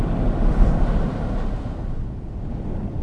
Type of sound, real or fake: real